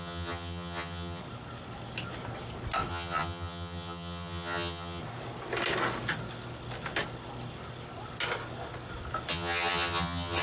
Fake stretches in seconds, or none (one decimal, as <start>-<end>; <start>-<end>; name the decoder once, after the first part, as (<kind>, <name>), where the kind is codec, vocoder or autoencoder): 0.0-1.2 (vocoder, HiFi-GAN); 2.9-5.0; 9.3-10.4